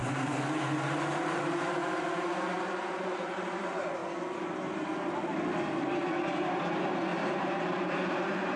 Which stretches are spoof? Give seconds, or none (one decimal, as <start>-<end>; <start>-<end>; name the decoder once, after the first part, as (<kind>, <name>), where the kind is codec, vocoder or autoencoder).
0.0-4.0 (vocoder, BigVGAN v2); 5.7-8.6